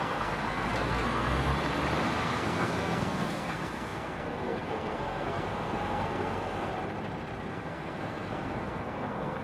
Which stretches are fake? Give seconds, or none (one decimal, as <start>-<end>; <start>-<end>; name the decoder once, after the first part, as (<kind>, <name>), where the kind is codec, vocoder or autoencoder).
0.0-1.5 (codec, SNAC); 2.2-6.7; 7.5-9.4